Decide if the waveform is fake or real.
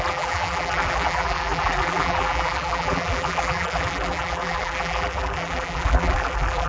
fake